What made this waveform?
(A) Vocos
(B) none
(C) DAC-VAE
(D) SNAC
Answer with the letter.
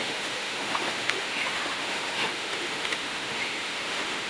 C